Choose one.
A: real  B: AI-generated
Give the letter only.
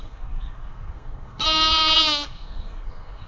B